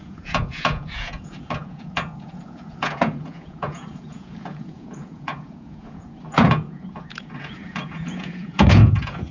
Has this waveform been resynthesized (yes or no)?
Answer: yes